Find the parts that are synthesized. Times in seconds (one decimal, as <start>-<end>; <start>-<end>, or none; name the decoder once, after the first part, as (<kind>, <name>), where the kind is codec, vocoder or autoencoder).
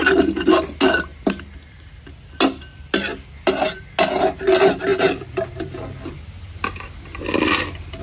none